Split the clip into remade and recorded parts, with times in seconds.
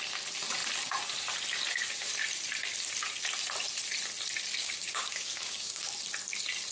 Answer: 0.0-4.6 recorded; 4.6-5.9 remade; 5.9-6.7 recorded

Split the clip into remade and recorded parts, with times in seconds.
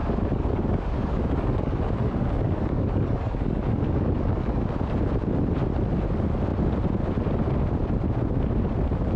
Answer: 0.0-4.7 remade; 4.7-9.2 recorded